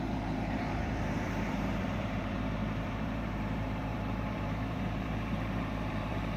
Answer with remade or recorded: remade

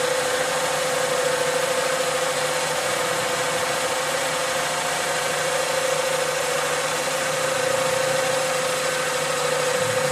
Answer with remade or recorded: recorded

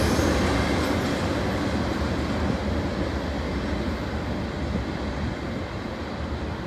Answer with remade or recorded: recorded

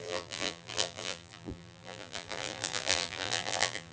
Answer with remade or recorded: remade